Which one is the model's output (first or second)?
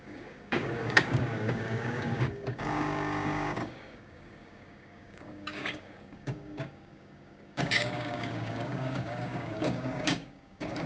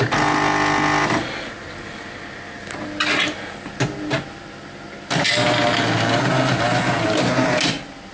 first